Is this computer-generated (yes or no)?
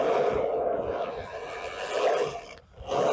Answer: no